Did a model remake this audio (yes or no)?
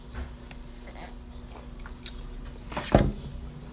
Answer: no